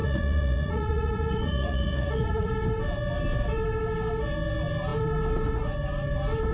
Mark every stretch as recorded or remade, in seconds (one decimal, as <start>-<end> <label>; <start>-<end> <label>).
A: 0.0-2.5 remade; 2.5-6.5 recorded